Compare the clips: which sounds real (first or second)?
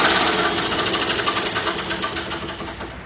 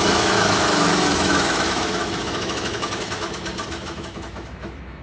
first